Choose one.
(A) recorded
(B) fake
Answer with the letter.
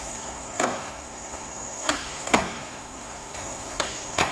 B